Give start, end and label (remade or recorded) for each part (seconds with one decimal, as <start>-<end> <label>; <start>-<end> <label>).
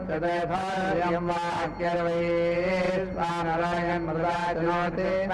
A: 0.0-4.4 recorded; 4.4-5.3 remade